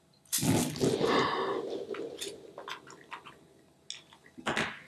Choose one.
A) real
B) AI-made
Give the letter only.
A